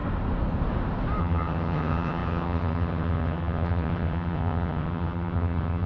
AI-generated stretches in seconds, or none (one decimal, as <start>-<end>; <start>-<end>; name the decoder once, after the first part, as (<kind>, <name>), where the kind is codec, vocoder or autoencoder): 1.2-5.9 (vocoder, HiFi-GAN)